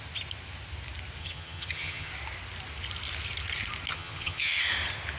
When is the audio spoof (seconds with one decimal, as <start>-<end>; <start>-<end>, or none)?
1.2-2.1; 3.9-4.6